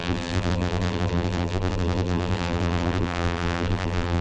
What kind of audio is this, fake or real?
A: fake